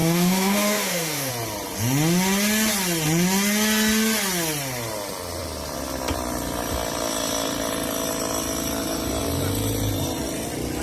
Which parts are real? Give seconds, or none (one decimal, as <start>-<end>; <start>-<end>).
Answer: 1.3-10.8